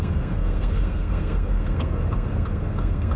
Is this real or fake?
fake